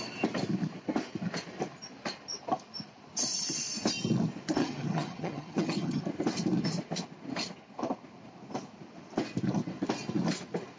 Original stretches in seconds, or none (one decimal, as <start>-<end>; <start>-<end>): 0.0-4.6; 6.0-10.8